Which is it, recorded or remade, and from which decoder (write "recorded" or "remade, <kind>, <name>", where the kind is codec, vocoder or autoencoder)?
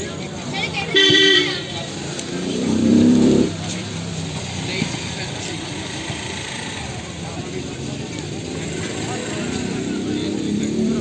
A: remade, vocoder, BigVGAN v2